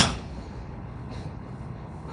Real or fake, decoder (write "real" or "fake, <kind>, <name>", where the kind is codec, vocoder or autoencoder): fake, codec, HILCodec